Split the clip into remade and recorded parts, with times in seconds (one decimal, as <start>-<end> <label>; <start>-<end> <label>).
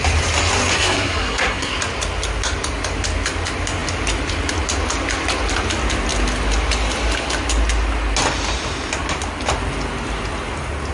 0.0-0.7 recorded; 0.7-1.7 remade; 1.7-10.9 recorded